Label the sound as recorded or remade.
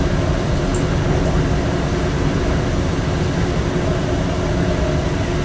recorded